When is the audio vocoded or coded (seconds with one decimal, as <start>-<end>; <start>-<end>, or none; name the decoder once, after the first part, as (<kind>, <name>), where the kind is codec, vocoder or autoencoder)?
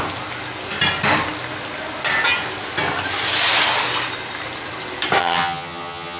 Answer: 5.2-6.2 (vocoder, HiFi-GAN)